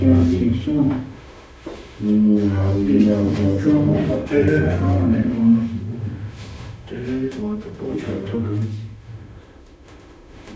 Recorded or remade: remade